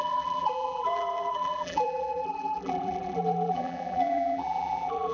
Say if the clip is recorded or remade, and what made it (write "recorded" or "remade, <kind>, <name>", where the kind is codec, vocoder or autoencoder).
remade, vocoder, BigVGAN v2